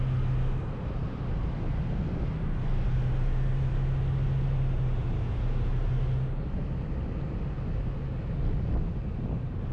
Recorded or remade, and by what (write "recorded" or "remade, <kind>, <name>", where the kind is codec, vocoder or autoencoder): recorded